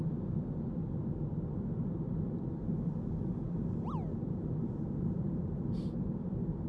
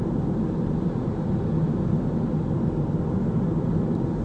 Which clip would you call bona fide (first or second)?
second